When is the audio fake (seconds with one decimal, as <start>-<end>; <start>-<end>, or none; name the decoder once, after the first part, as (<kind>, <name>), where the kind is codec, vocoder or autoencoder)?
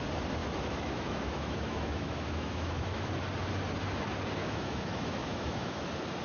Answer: 0.4-3.1 (autoencoder, DAC-VAE); 4.4-5.8